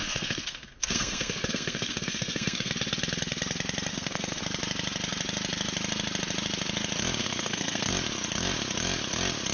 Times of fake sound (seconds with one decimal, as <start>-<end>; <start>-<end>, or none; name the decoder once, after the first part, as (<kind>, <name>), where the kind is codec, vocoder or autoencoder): 0.0-2.7 (codec, SNAC); 3.9-4.4; 7.2-7.9